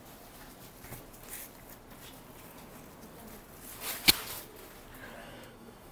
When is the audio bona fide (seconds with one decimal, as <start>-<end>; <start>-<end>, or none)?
0.0-5.2

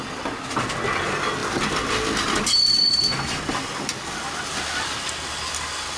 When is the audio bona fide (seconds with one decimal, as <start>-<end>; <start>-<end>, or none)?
0.0-6.0

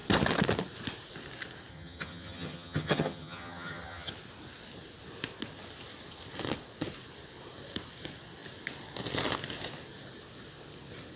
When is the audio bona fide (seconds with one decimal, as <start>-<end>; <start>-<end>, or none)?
0.0-1.7; 4.1-11.2

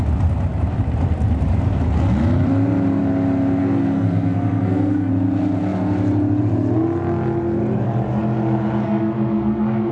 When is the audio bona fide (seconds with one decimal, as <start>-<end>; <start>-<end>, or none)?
0.0-3.6; 5.1-8.8

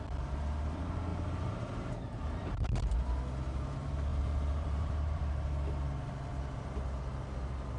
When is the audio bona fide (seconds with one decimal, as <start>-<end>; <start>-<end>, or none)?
0.0-1.1; 2.9-4.1; 5.2-7.8

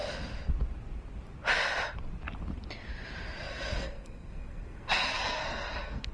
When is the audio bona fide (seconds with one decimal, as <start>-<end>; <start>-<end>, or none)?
0.0-3.5

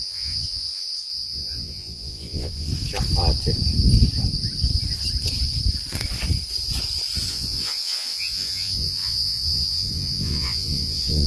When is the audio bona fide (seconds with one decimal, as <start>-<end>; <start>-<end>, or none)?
2.7-7.3